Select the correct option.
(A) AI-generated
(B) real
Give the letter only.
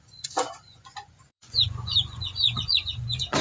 A